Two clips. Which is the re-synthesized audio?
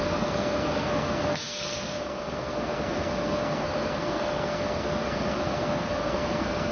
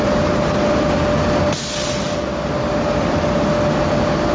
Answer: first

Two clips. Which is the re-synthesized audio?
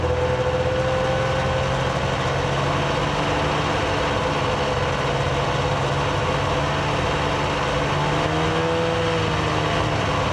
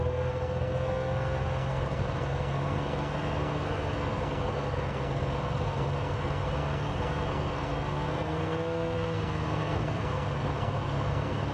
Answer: second